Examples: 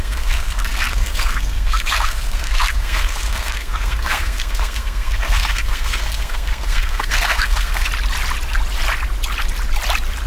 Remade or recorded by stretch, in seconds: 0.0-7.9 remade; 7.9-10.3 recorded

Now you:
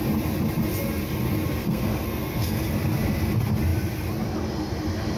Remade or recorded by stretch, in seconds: 0.0-1.6 recorded; 1.6-2.6 remade; 2.6-5.2 recorded

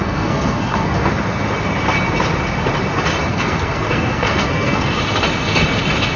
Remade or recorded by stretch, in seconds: 0.0-1.1 remade; 1.1-3.3 recorded; 3.3-5.0 remade; 5.0-6.2 recorded

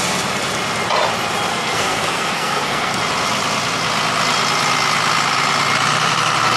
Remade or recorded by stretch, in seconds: 0.0-1.5 recorded; 1.5-3.0 remade; 3.0-6.6 recorded

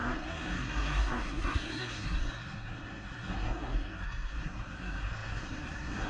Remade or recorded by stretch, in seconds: 0.0-6.1 remade